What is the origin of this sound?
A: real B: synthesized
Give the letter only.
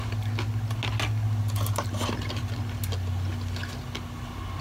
A